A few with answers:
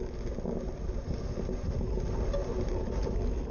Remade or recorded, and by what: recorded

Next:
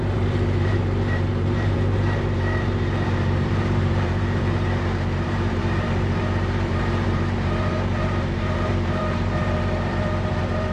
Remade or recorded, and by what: remade, vocoder, BigVGAN v2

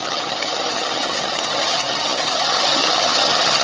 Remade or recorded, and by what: remade, vocoder, HiFi-GAN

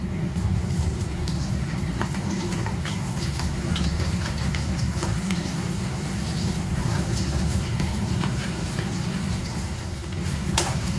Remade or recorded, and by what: remade, codec, SNAC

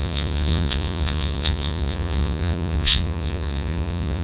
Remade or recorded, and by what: remade, vocoder, Vocos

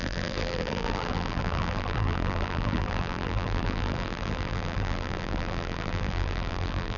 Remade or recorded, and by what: remade, vocoder, BigVGAN v2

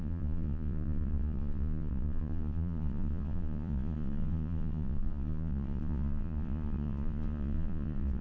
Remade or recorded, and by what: remade, vocoder, Vocos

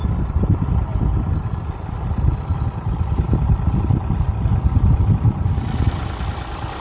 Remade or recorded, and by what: recorded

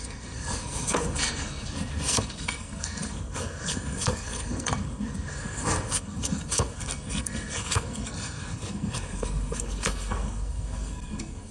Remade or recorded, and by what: remade, codec, SNAC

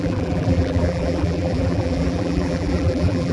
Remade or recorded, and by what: remade, vocoder, BigVGAN v2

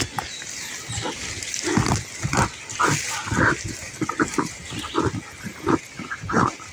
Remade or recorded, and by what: recorded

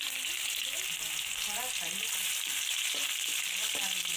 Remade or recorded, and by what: recorded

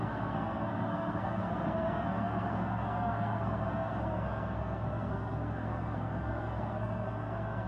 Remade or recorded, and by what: remade, codec, SNAC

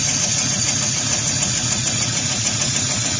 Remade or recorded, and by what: remade, vocoder, Vocos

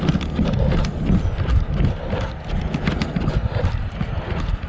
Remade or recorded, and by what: recorded